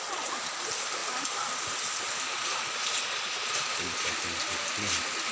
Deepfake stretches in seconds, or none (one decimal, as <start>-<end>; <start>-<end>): none